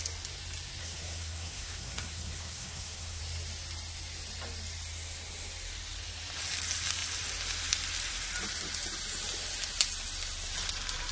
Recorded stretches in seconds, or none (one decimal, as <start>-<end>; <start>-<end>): 0.0-0.8; 3.2-11.1